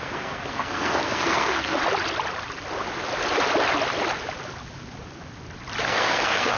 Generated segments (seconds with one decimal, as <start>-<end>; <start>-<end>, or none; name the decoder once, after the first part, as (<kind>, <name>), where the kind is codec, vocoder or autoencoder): 0.0-1.8 (codec, SNAC); 5.8-6.6